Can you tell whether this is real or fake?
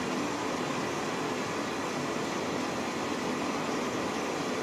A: real